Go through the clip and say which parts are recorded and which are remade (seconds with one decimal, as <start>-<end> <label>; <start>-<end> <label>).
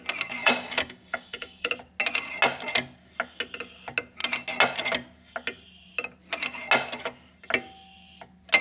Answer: 0.0-0.4 recorded; 0.4-1.7 remade; 1.7-8.6 recorded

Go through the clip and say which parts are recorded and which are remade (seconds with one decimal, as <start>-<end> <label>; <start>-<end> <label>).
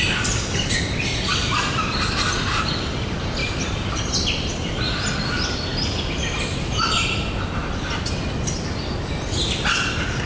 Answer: 0.0-3.4 recorded; 3.4-4.0 remade; 4.0-10.3 recorded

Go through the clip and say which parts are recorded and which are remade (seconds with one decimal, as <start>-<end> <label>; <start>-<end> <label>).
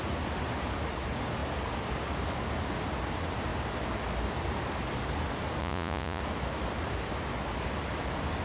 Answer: 0.0-5.6 recorded; 5.6-6.2 remade; 6.2-8.4 recorded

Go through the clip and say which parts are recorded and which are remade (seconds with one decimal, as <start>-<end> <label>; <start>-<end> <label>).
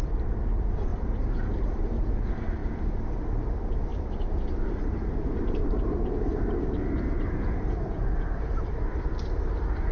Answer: 0.0-0.9 recorded; 0.9-2.1 remade; 2.1-2.6 recorded; 2.6-3.1 remade; 3.1-3.9 recorded; 3.9-8.0 remade; 8.0-9.9 recorded